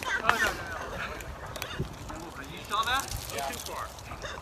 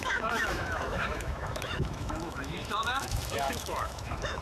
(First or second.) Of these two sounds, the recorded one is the first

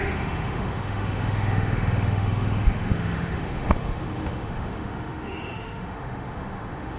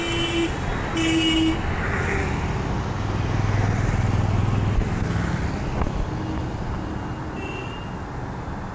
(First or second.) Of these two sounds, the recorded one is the second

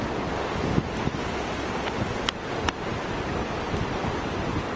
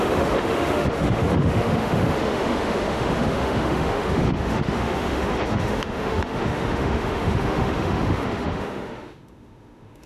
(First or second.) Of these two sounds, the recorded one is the first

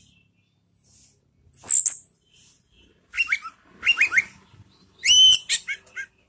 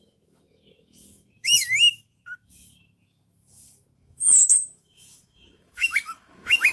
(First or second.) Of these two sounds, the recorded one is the first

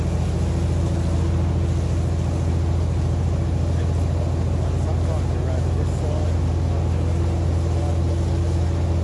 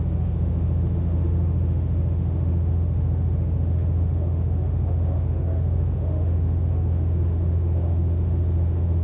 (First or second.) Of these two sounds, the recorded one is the first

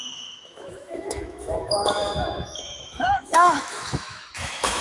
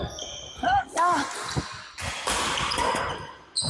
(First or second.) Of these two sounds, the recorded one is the second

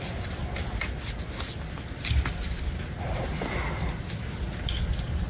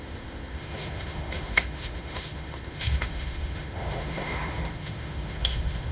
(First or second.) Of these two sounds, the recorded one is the first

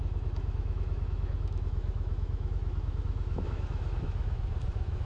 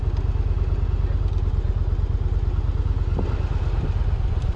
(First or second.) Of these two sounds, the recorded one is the second